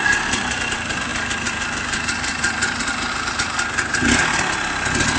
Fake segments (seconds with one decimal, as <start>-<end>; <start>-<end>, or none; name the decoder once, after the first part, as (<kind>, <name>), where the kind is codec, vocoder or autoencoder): 1.1-3.1 (vocoder, BigVGAN v2)